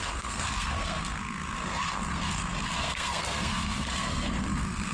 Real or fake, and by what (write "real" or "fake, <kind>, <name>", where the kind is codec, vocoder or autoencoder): fake, codec, SNAC